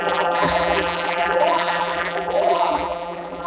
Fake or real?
fake